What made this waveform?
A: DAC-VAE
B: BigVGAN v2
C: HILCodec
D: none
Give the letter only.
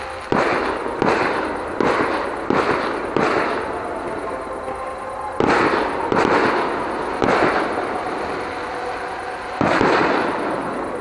D